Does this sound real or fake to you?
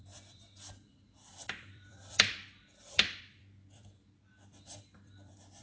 fake